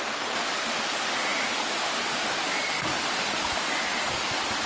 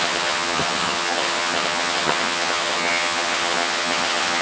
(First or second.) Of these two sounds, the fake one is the second